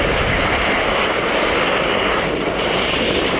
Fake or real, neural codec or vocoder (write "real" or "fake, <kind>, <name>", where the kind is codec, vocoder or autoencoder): real